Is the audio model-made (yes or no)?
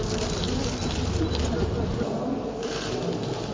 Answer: no